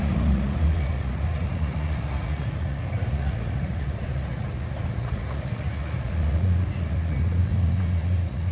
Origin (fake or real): fake